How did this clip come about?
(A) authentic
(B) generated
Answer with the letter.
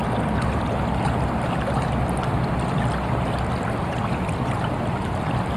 A